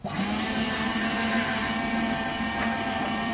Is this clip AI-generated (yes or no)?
no